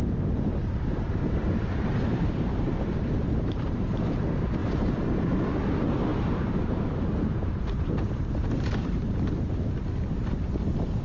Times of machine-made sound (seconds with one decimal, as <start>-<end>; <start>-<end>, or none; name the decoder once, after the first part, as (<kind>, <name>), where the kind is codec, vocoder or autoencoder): 0.6-4.1 (vocoder, BigVGAN v2); 4.6-5.5; 6.1-9.2